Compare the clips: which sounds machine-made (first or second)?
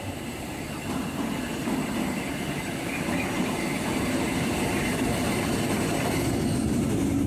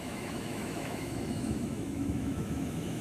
second